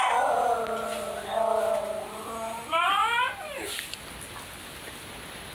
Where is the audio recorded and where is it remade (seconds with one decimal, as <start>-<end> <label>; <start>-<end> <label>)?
0.0-5.5 recorded

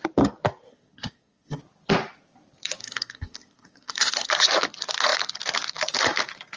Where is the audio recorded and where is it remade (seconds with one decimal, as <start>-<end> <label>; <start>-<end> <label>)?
0.0-0.7 recorded; 0.7-1.6 remade; 1.6-2.8 recorded; 2.8-4.3 remade; 4.3-6.6 recorded

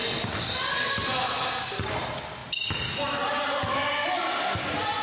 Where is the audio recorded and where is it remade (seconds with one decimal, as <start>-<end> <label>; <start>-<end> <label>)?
0.0-5.0 recorded

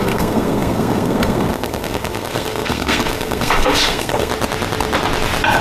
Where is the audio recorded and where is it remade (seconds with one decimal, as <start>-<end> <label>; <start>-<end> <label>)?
0.0-4.3 remade; 4.3-5.6 recorded

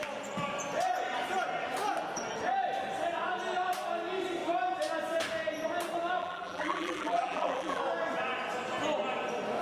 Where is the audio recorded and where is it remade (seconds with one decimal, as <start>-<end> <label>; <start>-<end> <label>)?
0.0-6.2 recorded; 6.2-7.8 remade; 7.8-9.6 recorded

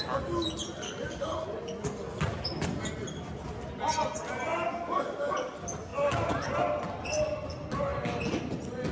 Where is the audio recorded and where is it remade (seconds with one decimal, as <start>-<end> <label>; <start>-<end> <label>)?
0.0-8.9 recorded